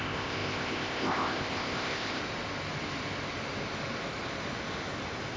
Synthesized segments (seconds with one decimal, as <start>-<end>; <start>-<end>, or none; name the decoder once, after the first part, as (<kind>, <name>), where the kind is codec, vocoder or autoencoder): 0.0-2.2 (codec, ZipCodec)